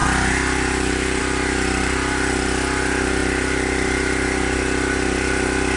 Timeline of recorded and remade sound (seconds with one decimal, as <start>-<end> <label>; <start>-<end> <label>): 0.0-5.8 recorded